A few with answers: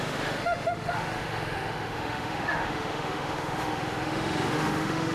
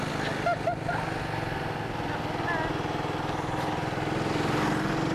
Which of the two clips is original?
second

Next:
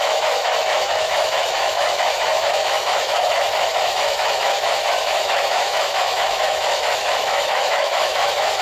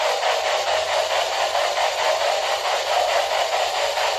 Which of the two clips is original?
second